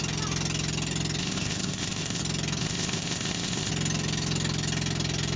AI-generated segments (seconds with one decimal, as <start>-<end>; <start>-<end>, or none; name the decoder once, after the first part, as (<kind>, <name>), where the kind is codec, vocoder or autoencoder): 1.2-2.2 (codec, ZipCodec); 2.6-3.7